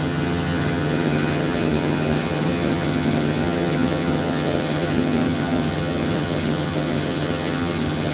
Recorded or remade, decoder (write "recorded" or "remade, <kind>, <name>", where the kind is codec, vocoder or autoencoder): remade, vocoder, HiFi-GAN